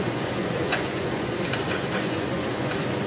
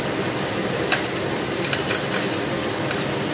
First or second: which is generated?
first